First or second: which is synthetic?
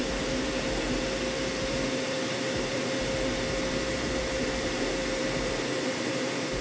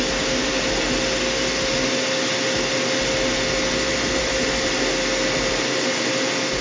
first